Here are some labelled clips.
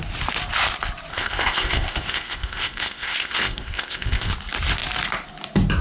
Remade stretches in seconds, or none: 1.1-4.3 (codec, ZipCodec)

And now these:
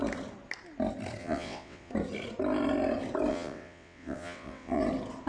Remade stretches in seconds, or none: 1.2-1.9 (vocoder, WaveNeXt); 3.3-4.8